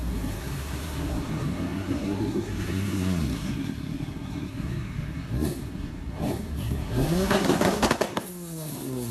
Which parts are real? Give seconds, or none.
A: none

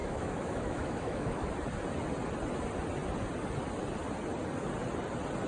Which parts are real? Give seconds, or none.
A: 1.5-5.5

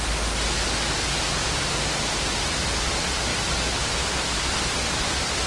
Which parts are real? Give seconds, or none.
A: 0.0-5.5

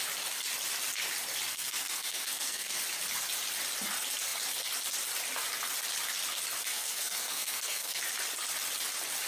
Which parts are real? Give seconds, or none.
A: 0.0-1.5; 2.8-6.7; 8.0-9.3

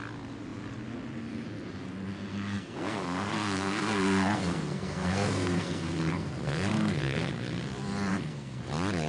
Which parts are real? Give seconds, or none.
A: 0.0-2.1; 7.3-8.1; 8.6-9.1

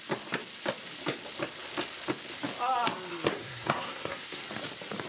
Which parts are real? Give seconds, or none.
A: 0.0-3.3; 4.4-5.1